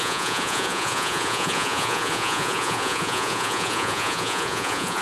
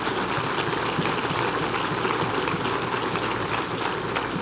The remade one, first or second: first